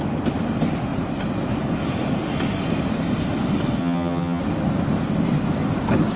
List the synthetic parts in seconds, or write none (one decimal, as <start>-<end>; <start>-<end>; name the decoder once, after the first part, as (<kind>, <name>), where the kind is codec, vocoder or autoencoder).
3.8-4.4 (vocoder, HiFi-GAN)